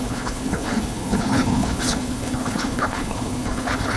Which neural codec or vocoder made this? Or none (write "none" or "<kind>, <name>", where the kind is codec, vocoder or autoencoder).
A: codec, HILCodec